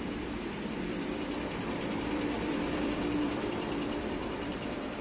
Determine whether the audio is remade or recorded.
remade